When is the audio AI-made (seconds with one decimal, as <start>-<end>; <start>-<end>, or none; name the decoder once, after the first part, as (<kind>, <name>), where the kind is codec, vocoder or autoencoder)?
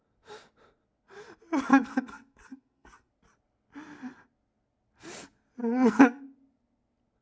1.7-3.1 (codec, SNAC); 5.6-6.2